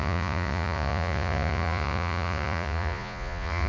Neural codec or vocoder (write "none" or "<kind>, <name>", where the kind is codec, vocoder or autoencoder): vocoder, Vocos